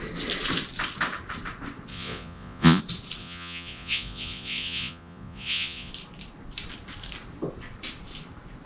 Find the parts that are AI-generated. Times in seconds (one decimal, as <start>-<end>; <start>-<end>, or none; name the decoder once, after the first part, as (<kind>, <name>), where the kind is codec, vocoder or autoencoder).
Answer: 1.9-2.8 (vocoder, Vocos); 3.2-5.9